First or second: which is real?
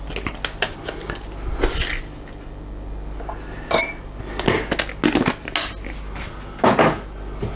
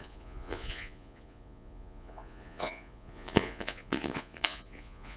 first